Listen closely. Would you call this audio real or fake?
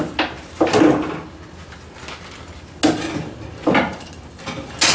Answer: real